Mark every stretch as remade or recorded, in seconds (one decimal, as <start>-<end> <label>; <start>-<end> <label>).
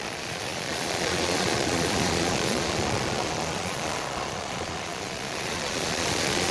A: 0.0-6.5 remade